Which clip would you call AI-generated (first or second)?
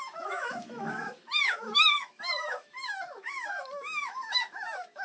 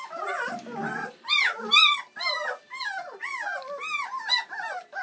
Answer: first